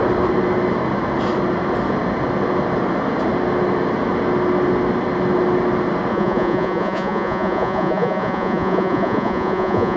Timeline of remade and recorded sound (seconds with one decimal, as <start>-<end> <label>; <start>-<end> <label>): 0.0-6.1 recorded; 6.1-10.0 remade